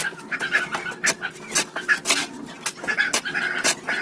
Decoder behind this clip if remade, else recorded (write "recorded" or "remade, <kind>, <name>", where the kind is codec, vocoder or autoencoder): recorded